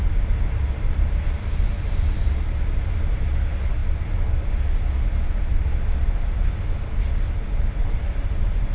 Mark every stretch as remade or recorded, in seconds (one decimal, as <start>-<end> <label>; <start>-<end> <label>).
0.0-8.7 recorded